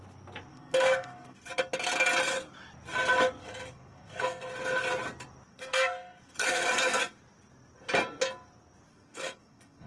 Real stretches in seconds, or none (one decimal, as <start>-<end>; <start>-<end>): 0.0-0.5; 1.5-3.4; 4.5-5.5; 7.0-8.9